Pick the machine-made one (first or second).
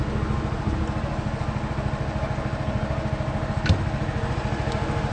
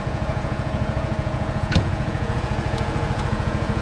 second